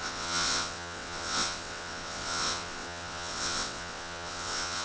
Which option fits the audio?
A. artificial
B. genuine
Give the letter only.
A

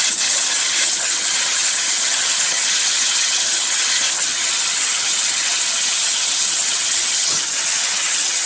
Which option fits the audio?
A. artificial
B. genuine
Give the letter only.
A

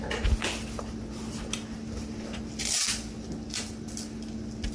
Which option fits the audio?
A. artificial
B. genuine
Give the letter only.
B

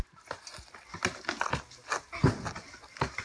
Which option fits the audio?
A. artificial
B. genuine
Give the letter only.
B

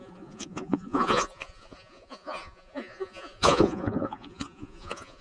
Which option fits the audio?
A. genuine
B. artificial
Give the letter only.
B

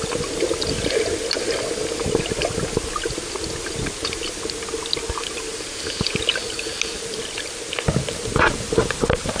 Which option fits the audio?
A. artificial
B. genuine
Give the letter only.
B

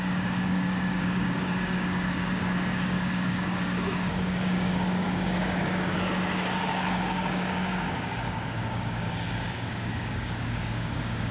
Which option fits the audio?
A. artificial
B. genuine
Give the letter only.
A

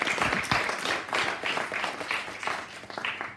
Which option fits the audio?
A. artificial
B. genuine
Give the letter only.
B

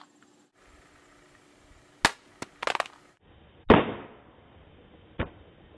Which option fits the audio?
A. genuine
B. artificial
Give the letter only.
A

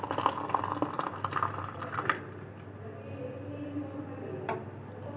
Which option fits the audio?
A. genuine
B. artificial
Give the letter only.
B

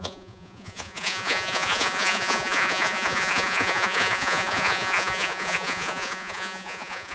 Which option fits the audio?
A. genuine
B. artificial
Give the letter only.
B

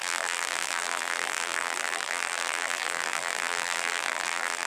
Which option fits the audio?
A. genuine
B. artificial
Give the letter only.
B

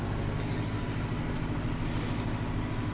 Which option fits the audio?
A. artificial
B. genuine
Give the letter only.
B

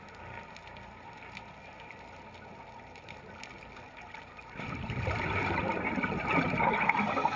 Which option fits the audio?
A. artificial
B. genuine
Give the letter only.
B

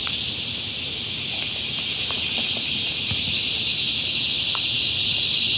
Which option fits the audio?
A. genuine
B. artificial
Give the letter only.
A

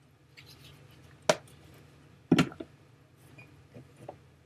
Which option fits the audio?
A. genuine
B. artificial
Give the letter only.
A